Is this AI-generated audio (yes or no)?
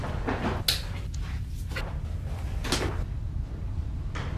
no